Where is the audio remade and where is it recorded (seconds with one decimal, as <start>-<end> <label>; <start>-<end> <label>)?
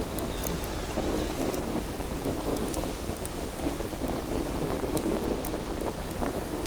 0.0-0.4 remade; 0.4-1.1 recorded; 1.1-5.2 remade; 5.2-6.0 recorded; 6.0-6.7 remade